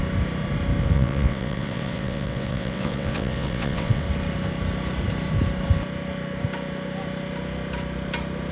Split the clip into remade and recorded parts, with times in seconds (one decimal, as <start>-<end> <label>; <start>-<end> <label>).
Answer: 0.0-0.8 recorded; 0.8-4.0 remade; 4.0-8.5 recorded